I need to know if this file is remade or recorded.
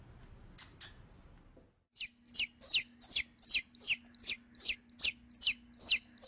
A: recorded